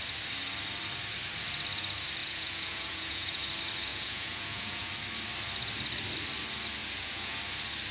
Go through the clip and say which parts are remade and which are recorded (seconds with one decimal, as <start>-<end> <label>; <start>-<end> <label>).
0.0-2.2 recorded; 2.2-3.4 remade; 3.4-3.9 recorded; 3.9-4.9 remade; 4.9-6.8 recorded; 6.8-7.4 remade; 7.4-7.9 recorded